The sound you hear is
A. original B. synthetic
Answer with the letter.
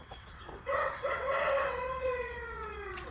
B